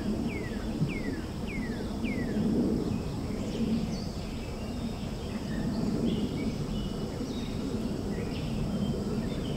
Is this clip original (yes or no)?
no